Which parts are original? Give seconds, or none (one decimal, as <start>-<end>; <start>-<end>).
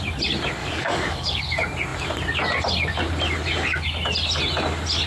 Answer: 0.0-0.6; 1.4-5.1